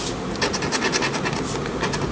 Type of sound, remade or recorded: recorded